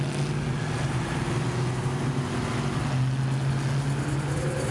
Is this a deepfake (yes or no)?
no